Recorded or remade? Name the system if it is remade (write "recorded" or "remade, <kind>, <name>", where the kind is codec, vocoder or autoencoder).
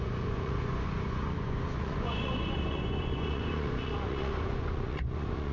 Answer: remade, vocoder, Vocos